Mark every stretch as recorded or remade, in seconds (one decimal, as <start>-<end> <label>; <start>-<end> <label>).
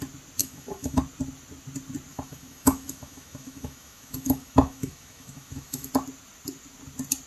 0.0-0.4 recorded; 0.4-1.0 remade; 1.0-2.1 recorded; 2.1-5.9 remade; 5.9-7.3 recorded